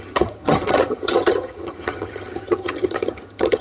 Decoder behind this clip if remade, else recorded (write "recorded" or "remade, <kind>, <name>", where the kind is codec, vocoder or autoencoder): remade, vocoder, HiFi-GAN